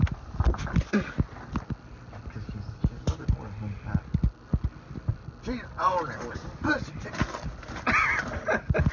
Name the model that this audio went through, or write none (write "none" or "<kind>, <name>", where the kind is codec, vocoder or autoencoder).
none